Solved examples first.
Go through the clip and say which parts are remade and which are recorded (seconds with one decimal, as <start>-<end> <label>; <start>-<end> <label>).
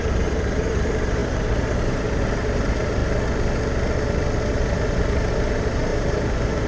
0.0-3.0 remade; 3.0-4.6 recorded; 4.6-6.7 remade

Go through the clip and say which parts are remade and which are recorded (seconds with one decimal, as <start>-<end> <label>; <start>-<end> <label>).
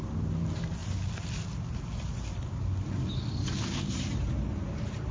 0.0-0.8 remade; 0.8-3.9 recorded; 3.9-5.1 remade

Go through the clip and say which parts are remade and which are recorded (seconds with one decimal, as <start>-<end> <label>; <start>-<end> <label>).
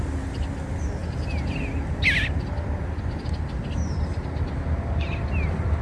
0.0-5.8 recorded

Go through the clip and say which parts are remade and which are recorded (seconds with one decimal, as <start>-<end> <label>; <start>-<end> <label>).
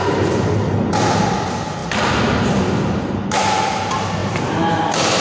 0.0-5.2 recorded